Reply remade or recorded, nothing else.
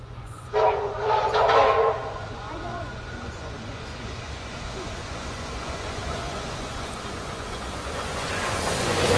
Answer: remade